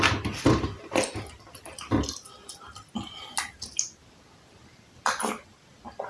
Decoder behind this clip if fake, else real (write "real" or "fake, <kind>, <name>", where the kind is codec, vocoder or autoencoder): real